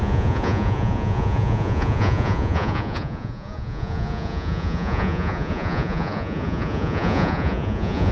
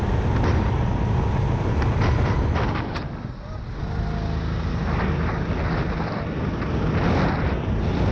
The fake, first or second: first